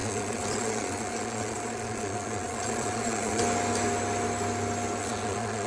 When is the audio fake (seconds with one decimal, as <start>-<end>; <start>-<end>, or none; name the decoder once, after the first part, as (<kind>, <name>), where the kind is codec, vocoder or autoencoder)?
0.0-3.4 (vocoder, Vocos); 5.0-5.7

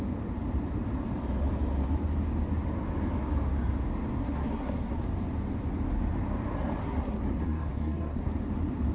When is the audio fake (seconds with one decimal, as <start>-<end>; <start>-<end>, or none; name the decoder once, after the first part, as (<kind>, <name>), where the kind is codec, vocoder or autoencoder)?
4.2-5.0 (codec, SNAC); 6.8-8.3

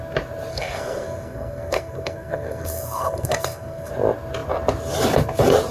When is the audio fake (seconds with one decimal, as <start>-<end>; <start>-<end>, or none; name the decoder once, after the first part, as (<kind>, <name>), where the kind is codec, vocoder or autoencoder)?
0.5-3.9 (codec, SNAC)

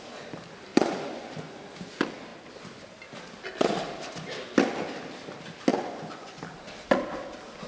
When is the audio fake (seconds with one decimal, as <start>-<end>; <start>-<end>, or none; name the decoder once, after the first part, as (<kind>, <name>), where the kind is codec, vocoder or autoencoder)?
0.7-1.6 (vocoder, Vocos); 5.7-6.4

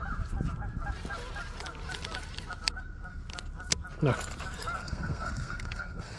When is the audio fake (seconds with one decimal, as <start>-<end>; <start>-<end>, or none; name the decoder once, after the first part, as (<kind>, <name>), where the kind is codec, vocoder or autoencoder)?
4.8-6.2 (codec, SNAC)

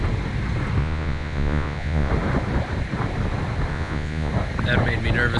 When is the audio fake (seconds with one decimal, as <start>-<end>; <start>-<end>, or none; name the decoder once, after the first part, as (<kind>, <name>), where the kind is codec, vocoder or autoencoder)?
0.8-2.1 (vocoder, Vocos); 3.7-4.3

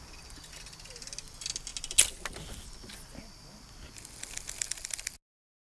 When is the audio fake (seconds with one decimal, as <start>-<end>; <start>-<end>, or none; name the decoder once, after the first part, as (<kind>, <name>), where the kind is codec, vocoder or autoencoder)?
none